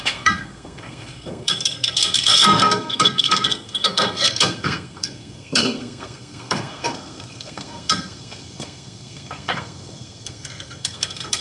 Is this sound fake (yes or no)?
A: yes